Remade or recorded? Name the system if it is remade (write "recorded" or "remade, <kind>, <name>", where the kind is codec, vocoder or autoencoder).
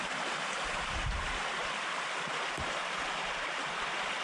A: recorded